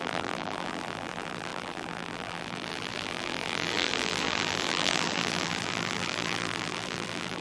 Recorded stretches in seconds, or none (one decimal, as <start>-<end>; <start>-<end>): none